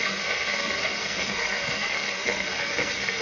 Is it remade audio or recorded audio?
remade